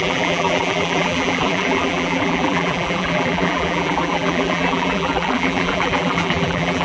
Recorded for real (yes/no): no